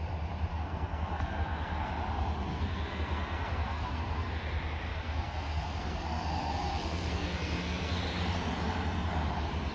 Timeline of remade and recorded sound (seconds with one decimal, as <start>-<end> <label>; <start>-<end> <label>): 0.0-0.5 recorded; 0.5-1.9 remade; 1.9-2.5 recorded; 2.5-4.3 remade; 4.3-4.9 recorded; 4.9-8.0 remade; 8.0-9.7 recorded